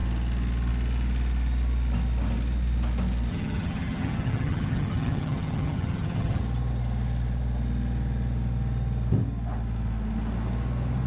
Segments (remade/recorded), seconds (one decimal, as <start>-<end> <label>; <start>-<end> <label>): 0.0-3.3 recorded; 3.3-6.4 remade; 6.4-11.1 recorded